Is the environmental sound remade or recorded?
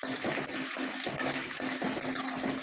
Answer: recorded